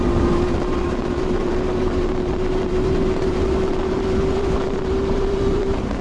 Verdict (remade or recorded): remade